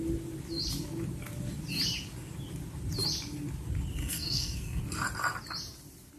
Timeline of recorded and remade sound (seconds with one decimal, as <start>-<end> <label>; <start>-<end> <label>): 0.0-4.0 recorded; 4.0-4.8 remade; 4.8-6.2 recorded